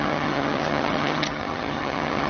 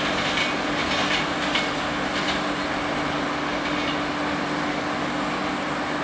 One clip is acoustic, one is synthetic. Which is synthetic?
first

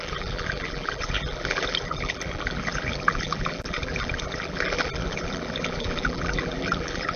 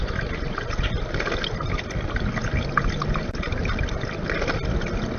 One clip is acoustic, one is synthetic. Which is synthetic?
first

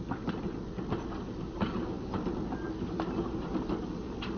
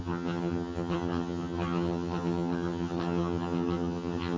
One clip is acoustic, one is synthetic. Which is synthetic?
second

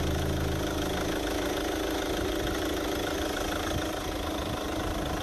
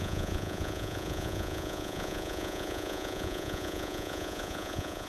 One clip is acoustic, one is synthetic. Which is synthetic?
second